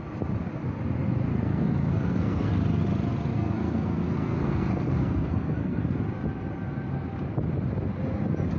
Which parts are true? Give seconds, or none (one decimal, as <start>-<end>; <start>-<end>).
0.0-1.3; 2.5-3.3; 6.0-8.6